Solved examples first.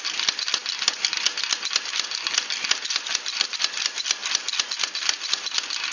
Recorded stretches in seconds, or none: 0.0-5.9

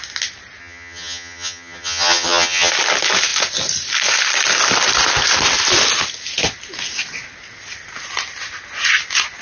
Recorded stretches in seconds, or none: 0.0-0.6; 2.7-9.4

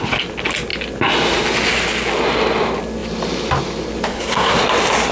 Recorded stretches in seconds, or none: 0.0-4.1; 4.6-5.1

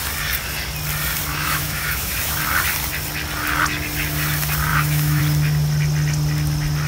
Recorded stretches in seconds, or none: 0.0-1.3; 2.4-4.7; 5.2-6.9

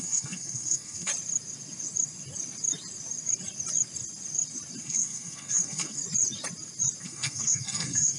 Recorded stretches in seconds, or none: 1.1-4.8; 6.0-7.0

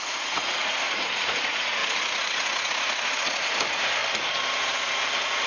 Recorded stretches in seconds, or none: 4.0-4.6

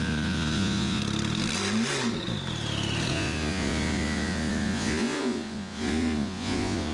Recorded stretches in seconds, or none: 1.0-3.1